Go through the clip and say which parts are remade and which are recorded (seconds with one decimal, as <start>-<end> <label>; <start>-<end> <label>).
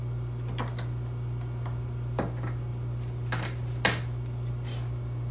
0.0-5.3 recorded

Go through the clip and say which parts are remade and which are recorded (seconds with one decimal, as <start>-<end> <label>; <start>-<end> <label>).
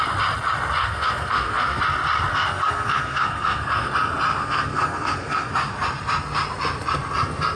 0.0-0.8 recorded; 0.8-1.8 remade; 1.8-2.3 recorded; 2.3-3.9 remade; 3.9-4.4 recorded; 4.4-5.5 remade; 5.5-7.6 recorded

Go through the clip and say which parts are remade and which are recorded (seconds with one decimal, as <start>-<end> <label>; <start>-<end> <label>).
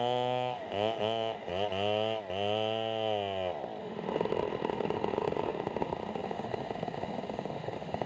0.0-1.5 remade; 1.5-3.8 recorded; 3.8-8.1 remade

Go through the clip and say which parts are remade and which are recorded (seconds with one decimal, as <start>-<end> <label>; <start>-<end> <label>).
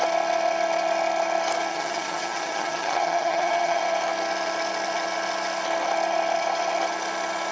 0.0-1.7 recorded; 1.7-3.8 remade; 3.8-7.5 recorded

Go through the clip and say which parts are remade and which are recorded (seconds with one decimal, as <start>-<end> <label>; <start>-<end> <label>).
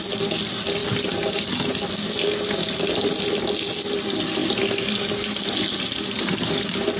0.0-7.0 recorded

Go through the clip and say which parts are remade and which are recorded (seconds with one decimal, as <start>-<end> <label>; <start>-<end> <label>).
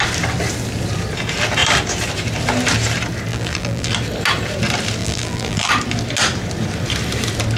0.0-3.3 recorded; 3.3-3.9 remade; 3.9-5.0 recorded; 5.0-5.7 remade; 5.7-7.6 recorded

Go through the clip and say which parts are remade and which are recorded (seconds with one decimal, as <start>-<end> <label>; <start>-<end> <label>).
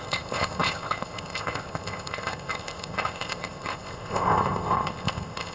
0.0-5.5 remade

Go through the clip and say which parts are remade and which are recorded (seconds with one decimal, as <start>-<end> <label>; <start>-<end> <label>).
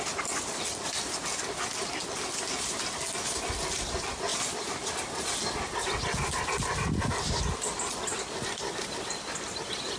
0.0-10.0 recorded